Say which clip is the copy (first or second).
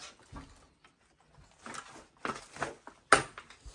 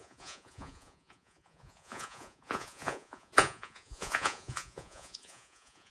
second